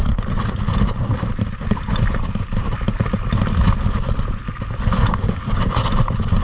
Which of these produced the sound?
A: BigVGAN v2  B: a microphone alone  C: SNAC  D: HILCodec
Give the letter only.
B